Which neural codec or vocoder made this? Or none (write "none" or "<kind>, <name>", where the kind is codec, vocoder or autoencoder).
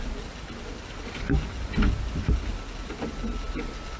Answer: none